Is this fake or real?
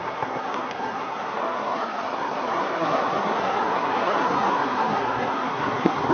fake